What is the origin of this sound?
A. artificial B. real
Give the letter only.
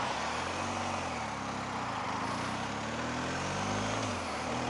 B